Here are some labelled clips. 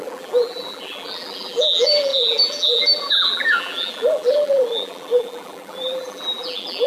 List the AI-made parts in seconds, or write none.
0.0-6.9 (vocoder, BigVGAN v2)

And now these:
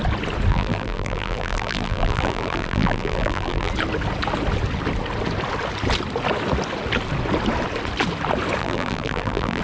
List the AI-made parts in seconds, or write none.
0.5-3.7 (vocoder, BigVGAN v2); 8.6-9.6

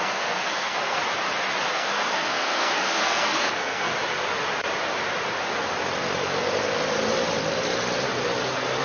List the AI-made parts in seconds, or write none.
0.0-1.0 (codec, SNAC); 1.7-3.9

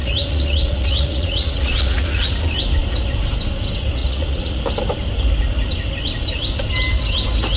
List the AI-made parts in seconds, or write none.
0.0-2.3 (vocoder, Vocos); 4.0-4.6

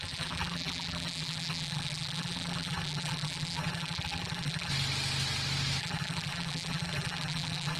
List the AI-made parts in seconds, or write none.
0.0-4.7 (vocoder, BigVGAN v2); 5.8-7.8

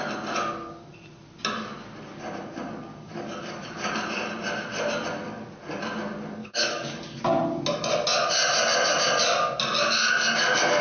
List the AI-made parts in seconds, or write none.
2.9-3.9 (codec, DAC); 6.4-7.2